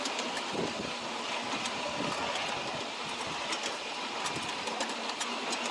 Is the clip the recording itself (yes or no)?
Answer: yes